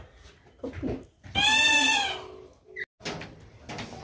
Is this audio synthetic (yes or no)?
no